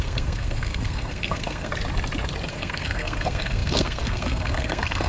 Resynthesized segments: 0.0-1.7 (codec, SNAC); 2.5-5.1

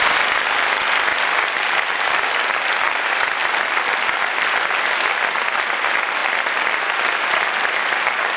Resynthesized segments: none

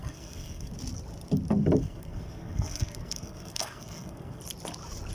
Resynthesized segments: 0.0-0.7 (codec, SNAC); 1.8-4.4

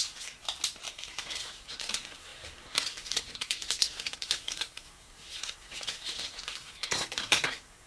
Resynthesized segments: 0.0-0.4 (codec, SNAC); 0.9-7.9

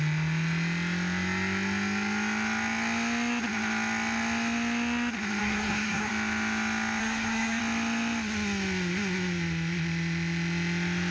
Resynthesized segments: 5.4-6.1 (codec, SNAC); 7.0-7.6

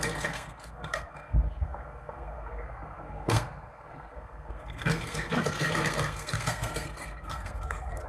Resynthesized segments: 0.0-8.1 (codec, SNAC)

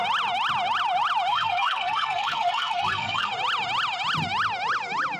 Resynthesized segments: 1.3-3.3 (codec, SNAC)

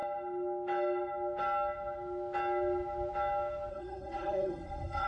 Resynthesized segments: 3.7-5.1 (codec, SNAC)